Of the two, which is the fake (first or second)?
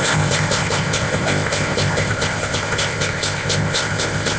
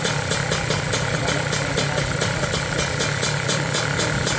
first